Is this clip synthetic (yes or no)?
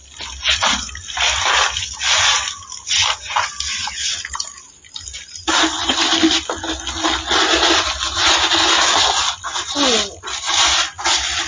no